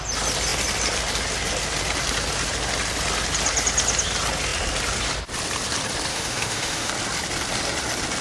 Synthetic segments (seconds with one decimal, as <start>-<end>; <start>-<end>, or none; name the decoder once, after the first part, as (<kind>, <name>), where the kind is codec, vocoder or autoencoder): 6.1-6.9 (autoencoder, DAC-VAE)